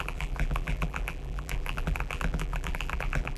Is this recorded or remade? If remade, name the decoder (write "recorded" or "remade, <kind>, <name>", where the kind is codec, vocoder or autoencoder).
remade, vocoder, BigVGAN v2